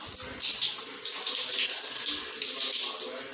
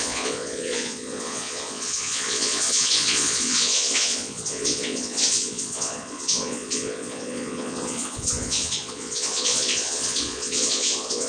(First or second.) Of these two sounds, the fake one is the second